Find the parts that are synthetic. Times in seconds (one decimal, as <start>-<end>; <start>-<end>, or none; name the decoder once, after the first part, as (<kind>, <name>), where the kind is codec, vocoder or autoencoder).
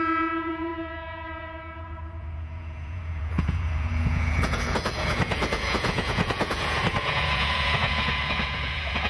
0.0-9.1 (vocoder, Vocos)